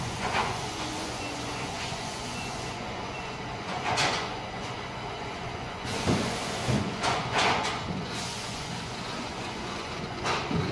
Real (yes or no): no